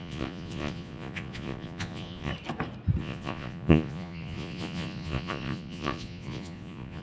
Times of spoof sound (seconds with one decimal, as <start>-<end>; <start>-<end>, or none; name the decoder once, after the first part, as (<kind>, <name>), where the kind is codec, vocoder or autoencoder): 0.0-2.3 (vocoder, Vocos); 3.0-7.0